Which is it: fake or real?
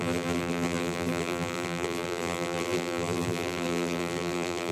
fake